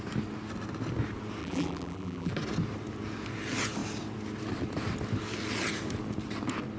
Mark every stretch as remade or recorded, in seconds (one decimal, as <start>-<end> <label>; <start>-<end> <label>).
0.0-1.4 recorded; 1.4-2.3 remade; 2.3-6.8 recorded

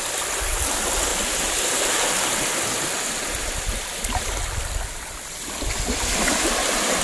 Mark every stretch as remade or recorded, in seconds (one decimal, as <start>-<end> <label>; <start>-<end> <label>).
0.0-7.0 recorded